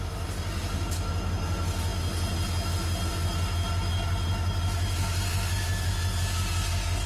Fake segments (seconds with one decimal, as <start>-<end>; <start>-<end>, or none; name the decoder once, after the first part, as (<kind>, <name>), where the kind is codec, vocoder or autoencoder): none